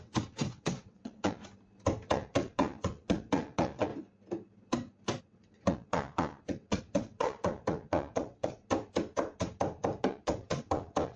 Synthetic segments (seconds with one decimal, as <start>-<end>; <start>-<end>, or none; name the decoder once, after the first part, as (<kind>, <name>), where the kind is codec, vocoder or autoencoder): 0.0-1.4 (vocoder, WaveNeXt); 2.1-3.9; 5.2-8.6; 10.0-11.2

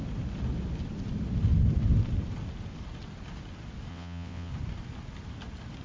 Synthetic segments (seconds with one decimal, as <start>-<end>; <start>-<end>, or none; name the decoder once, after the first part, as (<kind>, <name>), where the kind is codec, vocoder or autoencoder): 3.9-4.5 (vocoder, WaveNeXt)

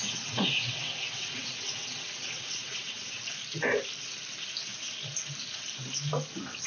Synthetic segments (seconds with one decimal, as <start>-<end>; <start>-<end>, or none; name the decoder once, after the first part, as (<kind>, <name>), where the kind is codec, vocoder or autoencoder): 0.0-3.2 (vocoder, WaveNeXt)

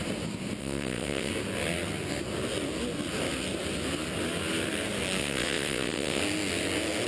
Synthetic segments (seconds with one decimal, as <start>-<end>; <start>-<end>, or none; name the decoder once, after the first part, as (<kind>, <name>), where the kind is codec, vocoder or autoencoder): 0.6-1.3 (vocoder, WaveNeXt); 5.2-6.2